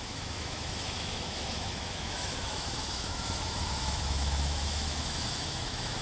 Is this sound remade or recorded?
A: remade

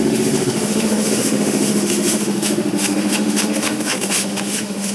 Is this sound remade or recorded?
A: remade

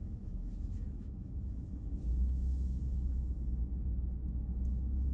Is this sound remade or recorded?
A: remade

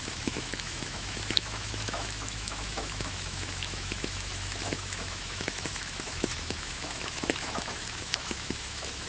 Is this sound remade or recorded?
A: remade